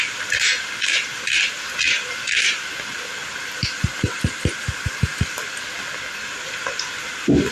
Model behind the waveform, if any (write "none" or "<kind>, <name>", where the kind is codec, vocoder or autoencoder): none